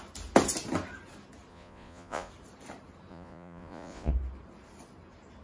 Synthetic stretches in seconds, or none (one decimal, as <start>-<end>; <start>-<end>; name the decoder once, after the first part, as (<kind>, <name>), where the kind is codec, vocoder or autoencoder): 1.5-2.3 (vocoder, Vocos); 3.1-4.1